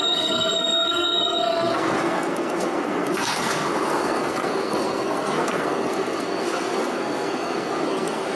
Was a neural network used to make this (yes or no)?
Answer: yes